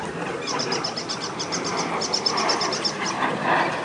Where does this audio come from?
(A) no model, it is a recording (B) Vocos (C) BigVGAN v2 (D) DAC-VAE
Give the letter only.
A